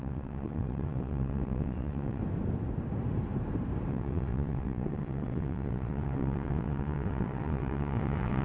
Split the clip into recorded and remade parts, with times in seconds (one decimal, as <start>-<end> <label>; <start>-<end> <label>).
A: 0.0-2.2 remade; 2.2-3.9 recorded; 3.9-8.4 remade

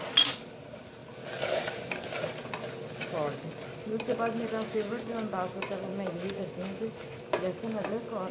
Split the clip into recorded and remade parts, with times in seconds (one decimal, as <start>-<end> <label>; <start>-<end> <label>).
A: 0.0-4.5 recorded; 4.5-5.0 remade; 5.0-5.9 recorded; 5.9-7.9 remade; 7.9-8.3 recorded

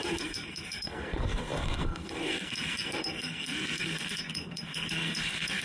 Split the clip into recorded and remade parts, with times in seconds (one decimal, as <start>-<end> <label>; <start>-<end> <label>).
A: 0.0-5.6 remade